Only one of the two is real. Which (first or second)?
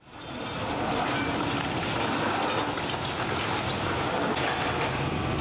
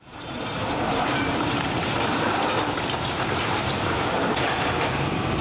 first